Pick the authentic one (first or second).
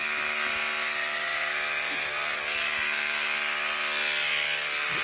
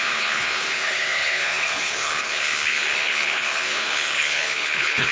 first